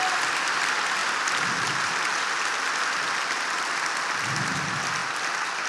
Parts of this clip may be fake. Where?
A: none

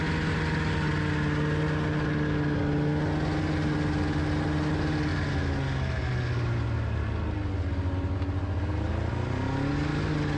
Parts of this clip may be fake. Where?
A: none

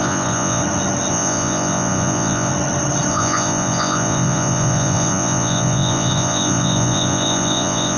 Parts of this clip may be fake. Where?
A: 0.0-0.6 (vocoder, Vocos); 1.1-2.5; 3.1-8.0

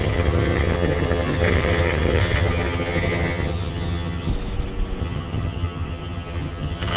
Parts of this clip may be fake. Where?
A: 0.0-4.3 (vocoder, HiFi-GAN); 5.0-7.0

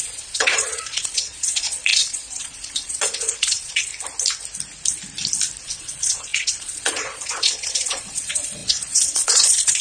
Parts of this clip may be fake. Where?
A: 0.0-3.9 (vocoder, Vocos); 5.6-9.8